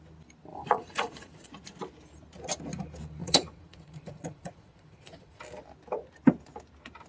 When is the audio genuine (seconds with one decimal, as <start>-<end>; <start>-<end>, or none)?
0.0-0.5; 1.5-3.2; 5.4-7.1